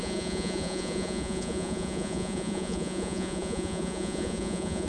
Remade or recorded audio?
remade